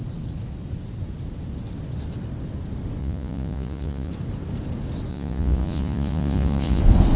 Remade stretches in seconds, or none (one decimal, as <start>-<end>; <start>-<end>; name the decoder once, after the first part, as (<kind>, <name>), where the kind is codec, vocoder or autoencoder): 3.0-4.1 (vocoder, Vocos); 5.1-6.8